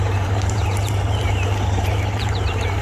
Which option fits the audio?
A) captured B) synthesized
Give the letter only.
B